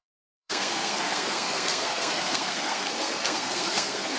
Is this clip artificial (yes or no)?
yes